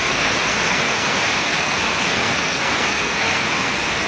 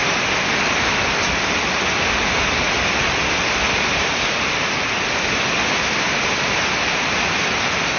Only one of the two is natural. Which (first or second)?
second